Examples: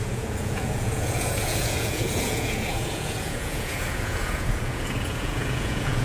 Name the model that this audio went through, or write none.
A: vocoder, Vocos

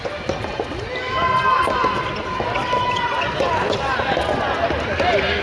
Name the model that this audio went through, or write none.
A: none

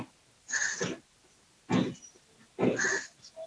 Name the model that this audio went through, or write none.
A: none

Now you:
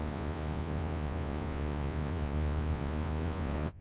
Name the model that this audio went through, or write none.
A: vocoder, Vocos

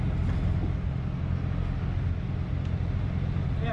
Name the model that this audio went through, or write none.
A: none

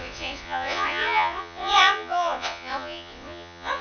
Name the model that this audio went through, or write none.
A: vocoder, Vocos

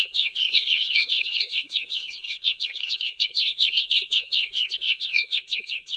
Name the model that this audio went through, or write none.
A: codec, SNAC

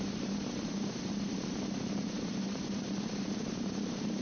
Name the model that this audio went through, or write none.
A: vocoder, BigVGAN v2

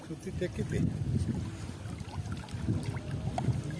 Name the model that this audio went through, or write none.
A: none